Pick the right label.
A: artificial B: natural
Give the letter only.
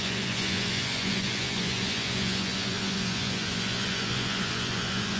A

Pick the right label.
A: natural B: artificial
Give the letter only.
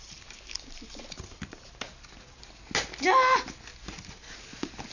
A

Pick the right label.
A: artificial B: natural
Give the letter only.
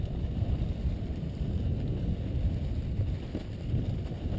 B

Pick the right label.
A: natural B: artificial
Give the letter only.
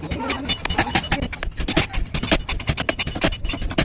A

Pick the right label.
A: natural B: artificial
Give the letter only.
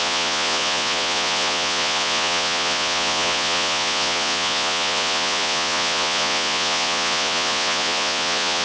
B